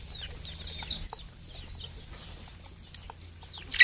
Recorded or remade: recorded